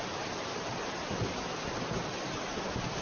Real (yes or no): yes